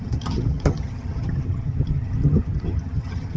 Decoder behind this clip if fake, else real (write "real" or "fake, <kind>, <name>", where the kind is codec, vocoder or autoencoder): fake, vocoder, HiFi-GAN